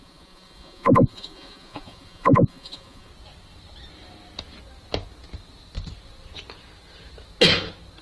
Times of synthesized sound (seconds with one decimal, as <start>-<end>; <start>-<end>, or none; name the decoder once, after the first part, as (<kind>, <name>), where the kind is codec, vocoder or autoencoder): 0.0-3.1 (vocoder, Vocos)